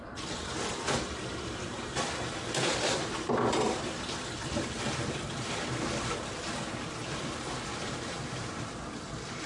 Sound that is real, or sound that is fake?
fake